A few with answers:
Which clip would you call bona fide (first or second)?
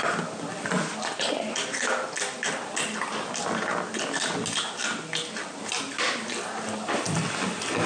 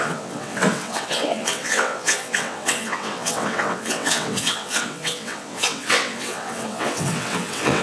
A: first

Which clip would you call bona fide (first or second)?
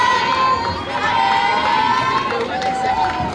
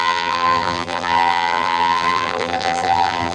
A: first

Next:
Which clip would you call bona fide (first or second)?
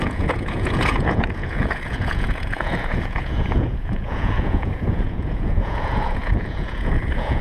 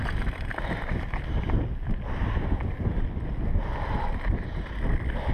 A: second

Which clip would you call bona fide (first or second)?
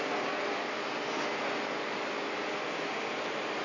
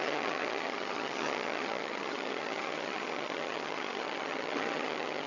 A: first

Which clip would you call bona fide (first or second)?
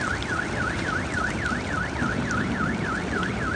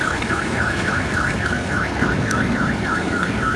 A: first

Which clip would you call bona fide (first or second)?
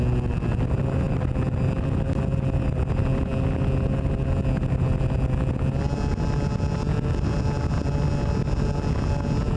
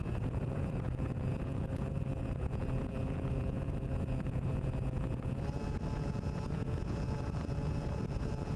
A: first